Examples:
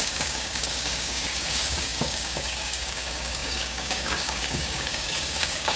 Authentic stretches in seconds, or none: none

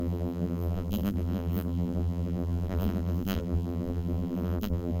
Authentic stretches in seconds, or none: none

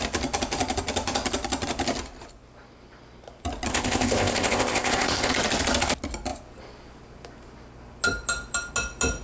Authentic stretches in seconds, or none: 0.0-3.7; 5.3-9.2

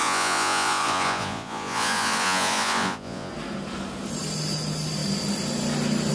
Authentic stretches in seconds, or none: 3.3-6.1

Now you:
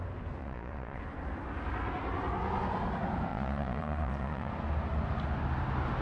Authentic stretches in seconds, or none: 0.0-0.4; 1.0-3.3; 4.5-6.0

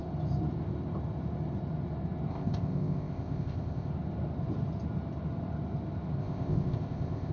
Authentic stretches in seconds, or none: 0.0-2.3; 3.9-6.2